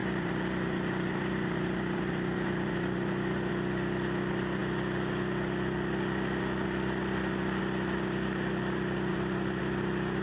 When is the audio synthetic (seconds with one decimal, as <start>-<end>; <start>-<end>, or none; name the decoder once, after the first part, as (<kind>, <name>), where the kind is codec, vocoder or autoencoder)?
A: 0.0-3.5 (vocoder, BigVGAN v2); 9.1-9.6